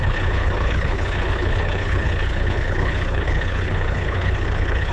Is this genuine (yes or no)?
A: no